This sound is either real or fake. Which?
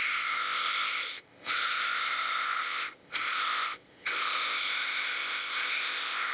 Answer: fake